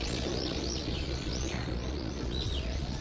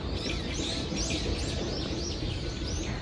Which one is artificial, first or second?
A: first